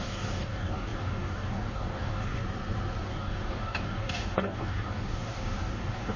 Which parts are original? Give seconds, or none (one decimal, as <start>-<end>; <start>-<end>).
2.4-3.0